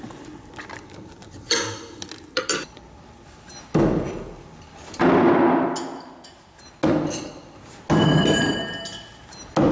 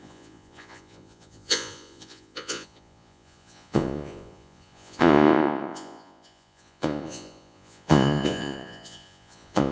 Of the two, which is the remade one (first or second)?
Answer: second